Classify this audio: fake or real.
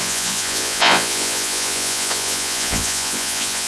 fake